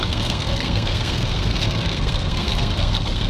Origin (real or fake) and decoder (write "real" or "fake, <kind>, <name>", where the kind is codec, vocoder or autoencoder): fake, codec, SNAC